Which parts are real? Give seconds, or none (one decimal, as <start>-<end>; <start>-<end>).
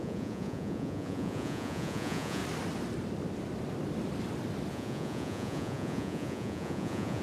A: 2.4-4.7